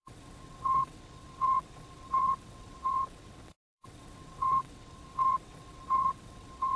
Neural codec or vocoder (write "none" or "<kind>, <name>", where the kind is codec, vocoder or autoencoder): vocoder, WaveNeXt